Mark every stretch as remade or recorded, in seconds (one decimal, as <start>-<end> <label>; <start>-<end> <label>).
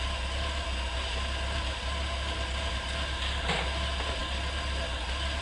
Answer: 0.0-5.4 recorded